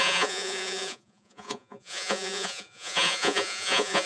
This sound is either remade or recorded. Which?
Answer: remade